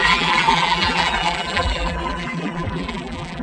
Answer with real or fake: fake